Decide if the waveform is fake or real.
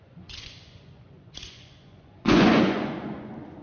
fake